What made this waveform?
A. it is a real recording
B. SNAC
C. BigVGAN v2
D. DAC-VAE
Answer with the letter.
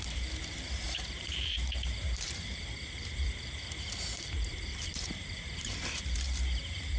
C